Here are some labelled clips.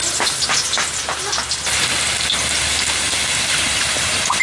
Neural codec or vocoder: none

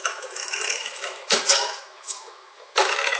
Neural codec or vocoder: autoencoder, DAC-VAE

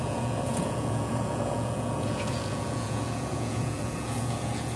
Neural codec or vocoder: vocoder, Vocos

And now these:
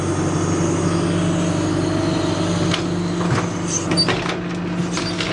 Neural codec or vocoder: none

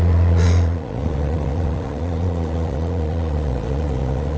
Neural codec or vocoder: vocoder, Vocos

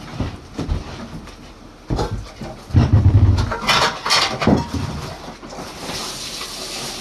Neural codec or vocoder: none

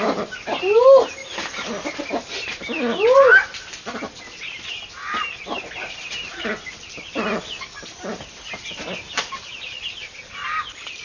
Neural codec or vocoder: none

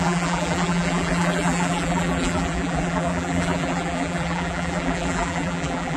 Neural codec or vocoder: vocoder, BigVGAN v2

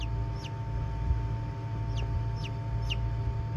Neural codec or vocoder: none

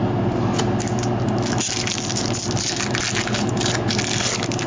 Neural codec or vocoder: none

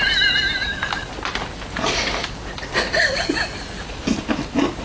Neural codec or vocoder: none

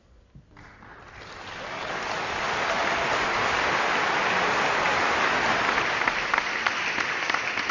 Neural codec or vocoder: none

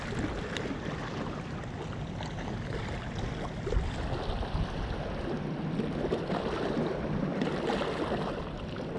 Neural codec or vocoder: none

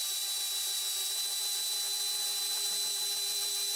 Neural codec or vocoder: none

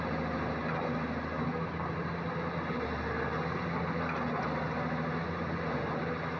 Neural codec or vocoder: none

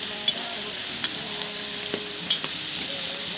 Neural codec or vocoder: none